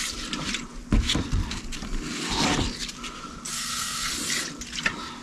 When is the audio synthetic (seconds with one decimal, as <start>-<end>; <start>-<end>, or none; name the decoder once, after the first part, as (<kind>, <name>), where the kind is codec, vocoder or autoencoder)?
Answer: 3.5-4.1 (codec, SNAC)